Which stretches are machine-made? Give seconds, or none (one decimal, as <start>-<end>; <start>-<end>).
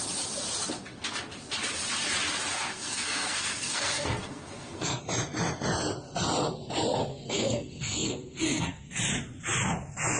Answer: 2.5-5.0; 7.1-9.0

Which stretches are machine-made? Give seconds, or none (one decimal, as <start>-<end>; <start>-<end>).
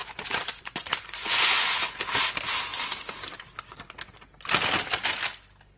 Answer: 0.0-2.0